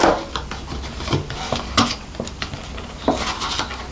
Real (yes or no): yes